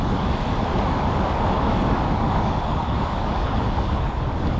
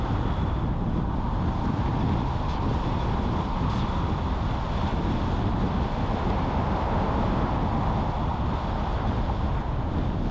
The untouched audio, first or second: second